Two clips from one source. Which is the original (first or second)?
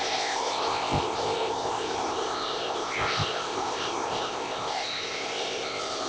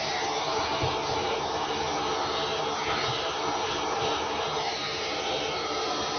second